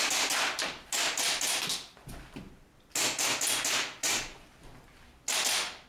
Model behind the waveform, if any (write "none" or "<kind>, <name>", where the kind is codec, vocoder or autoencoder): none